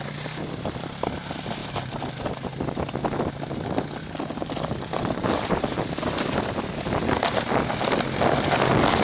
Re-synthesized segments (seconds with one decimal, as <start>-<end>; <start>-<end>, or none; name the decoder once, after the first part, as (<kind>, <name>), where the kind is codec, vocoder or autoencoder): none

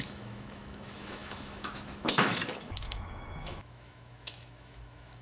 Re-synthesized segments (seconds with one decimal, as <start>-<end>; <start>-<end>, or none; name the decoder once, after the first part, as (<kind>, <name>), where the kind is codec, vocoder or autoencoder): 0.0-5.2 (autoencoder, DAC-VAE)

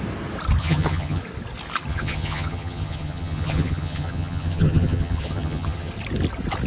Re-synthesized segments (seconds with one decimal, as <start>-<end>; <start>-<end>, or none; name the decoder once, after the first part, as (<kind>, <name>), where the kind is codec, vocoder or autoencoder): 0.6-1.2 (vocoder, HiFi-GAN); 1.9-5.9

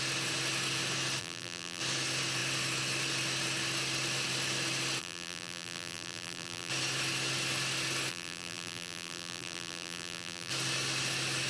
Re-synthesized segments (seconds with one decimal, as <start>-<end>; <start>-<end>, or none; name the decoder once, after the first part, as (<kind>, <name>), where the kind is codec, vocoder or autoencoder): 1.2-1.8 (vocoder, BigVGAN v2); 5.0-6.7; 8.1-10.5

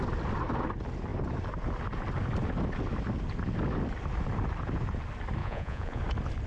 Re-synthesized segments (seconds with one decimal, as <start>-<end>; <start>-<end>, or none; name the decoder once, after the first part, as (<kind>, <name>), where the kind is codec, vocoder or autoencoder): 5.4-6.0 (vocoder, Vocos)